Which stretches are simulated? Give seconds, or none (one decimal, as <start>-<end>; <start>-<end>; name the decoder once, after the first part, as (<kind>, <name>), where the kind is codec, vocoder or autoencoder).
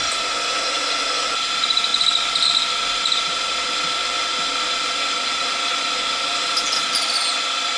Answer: none